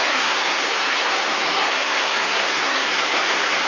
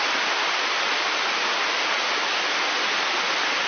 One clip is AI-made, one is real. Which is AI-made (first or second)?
first